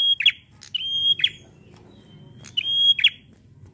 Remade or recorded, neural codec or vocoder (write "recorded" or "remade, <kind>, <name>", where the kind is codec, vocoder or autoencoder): recorded